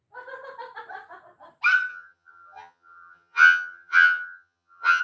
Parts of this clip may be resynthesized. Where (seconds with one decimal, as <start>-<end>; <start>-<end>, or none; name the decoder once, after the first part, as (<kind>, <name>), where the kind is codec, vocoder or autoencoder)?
1.9-5.0 (vocoder, HiFi-GAN)